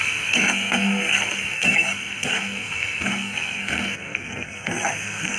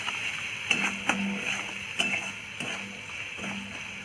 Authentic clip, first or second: second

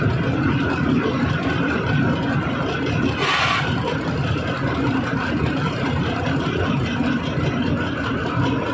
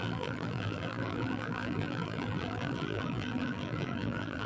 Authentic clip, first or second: first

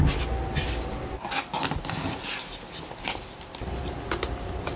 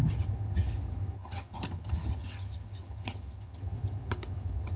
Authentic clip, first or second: first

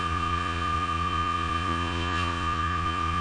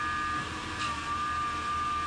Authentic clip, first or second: second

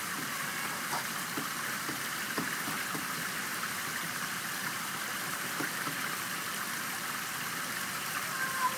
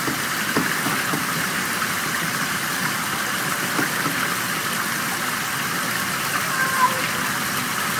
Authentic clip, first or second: second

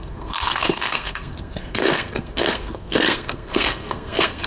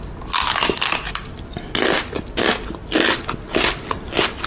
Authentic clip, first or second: second